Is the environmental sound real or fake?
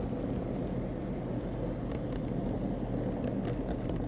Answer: real